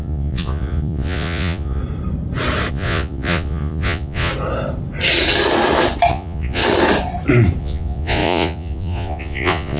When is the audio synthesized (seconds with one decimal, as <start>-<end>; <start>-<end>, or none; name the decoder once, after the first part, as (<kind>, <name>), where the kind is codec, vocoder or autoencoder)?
0.0-1.8 (vocoder, Vocos); 2.7-4.3; 6.1-6.6; 7.6-9.8